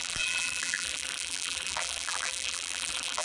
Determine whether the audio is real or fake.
fake